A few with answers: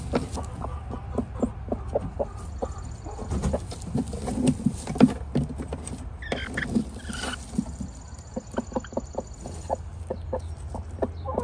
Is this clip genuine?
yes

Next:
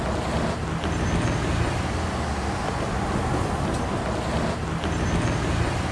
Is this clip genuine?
yes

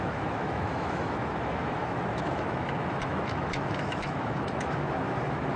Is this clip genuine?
no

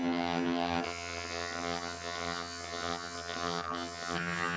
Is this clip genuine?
no